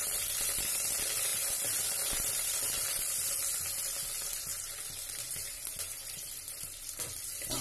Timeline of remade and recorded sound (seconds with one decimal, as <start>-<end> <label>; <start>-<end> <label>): 0.0-4.5 remade; 4.5-5.5 recorded; 5.5-7.6 remade